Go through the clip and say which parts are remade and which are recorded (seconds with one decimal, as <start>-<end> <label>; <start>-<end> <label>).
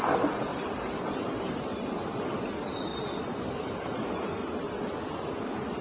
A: 0.0-0.5 recorded; 0.5-1.9 remade; 1.9-2.9 recorded; 2.9-3.5 remade; 3.5-5.8 recorded